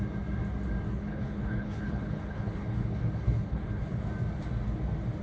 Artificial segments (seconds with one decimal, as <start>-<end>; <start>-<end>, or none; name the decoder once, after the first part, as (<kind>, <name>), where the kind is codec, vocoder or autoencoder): 0.9-4.0 (codec, HILCodec)